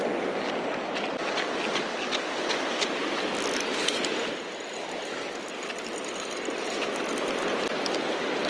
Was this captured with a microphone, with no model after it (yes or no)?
yes